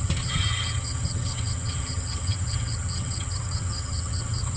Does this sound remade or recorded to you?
remade